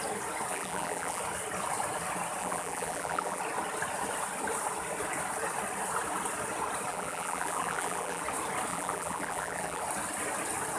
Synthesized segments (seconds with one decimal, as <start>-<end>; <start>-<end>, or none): 0.5-1.2; 2.4-3.4; 6.9-8.2; 8.7-9.8